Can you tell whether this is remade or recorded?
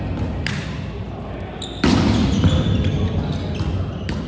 recorded